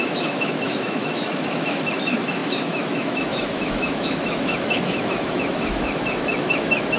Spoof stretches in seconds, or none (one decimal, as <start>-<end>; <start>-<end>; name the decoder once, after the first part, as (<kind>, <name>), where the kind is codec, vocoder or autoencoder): 0.0-7.0 (autoencoder, DAC-VAE)